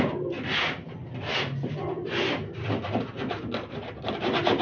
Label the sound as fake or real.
real